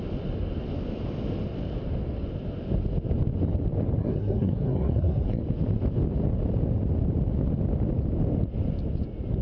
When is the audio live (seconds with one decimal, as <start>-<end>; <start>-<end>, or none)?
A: 0.0-4.0; 5.4-9.4